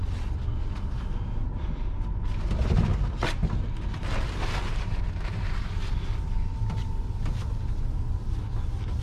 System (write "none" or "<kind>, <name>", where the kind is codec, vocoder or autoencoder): none